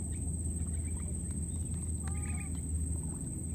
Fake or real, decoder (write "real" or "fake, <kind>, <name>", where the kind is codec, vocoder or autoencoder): real